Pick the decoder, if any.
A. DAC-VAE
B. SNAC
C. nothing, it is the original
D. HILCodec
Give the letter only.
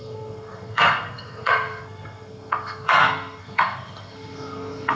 B